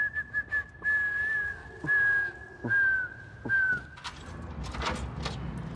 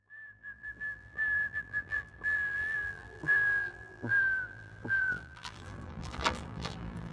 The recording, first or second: first